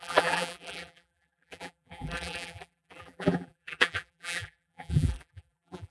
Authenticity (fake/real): fake